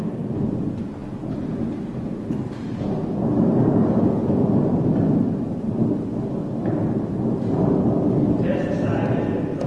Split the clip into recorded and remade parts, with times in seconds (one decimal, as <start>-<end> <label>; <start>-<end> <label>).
0.0-9.7 recorded